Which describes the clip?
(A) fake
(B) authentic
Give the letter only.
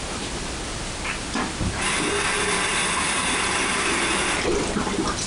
A